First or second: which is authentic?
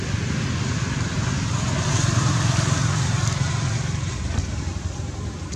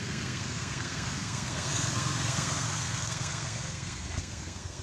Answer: first